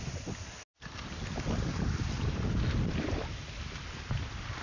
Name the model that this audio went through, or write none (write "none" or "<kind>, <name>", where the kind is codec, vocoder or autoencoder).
none